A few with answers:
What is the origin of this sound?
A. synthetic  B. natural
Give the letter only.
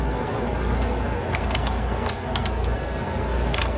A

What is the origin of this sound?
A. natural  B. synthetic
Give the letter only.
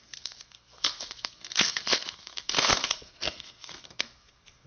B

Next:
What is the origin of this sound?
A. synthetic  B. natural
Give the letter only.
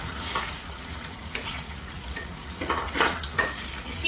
A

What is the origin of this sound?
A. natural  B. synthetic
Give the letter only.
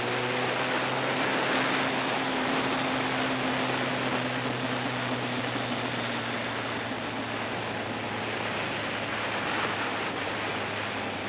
A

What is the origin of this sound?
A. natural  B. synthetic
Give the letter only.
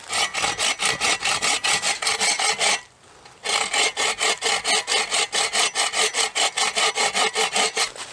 A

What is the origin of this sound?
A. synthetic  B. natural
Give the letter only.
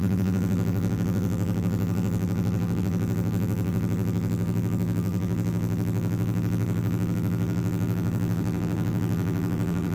A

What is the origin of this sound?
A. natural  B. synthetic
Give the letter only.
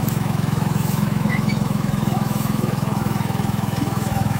B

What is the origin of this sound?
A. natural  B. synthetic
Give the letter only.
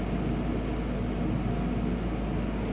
A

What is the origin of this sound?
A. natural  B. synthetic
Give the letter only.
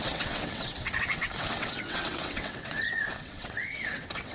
B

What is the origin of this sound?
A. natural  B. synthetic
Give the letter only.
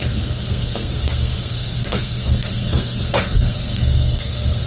B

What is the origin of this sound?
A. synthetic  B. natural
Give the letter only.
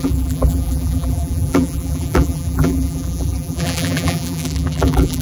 A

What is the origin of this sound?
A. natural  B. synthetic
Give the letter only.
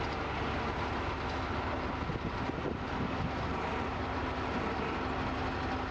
A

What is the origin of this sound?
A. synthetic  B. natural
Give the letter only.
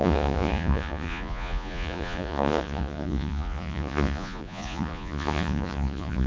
A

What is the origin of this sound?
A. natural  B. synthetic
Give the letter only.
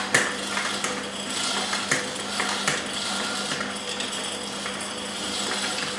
A